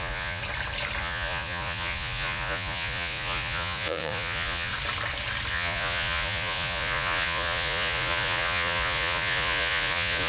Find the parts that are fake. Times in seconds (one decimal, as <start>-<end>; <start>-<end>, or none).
0.0-0.4; 1.0-4.7; 5.5-10.3